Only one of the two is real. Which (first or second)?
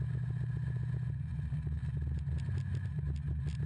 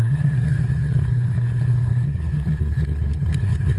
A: first